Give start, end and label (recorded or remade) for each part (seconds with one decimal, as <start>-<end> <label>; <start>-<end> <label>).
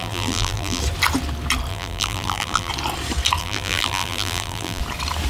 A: 0.0-0.8 remade; 0.8-1.7 recorded; 1.7-2.7 remade; 2.7-3.4 recorded; 3.4-4.8 remade; 4.8-5.3 recorded